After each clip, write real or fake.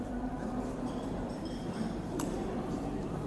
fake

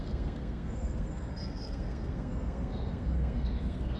fake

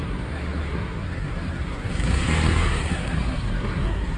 fake